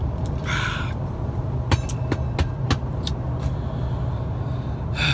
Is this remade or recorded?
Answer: recorded